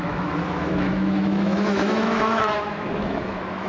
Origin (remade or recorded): remade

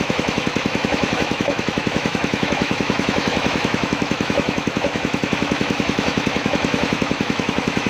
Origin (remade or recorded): remade